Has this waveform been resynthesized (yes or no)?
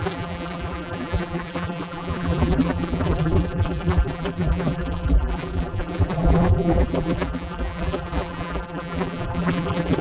yes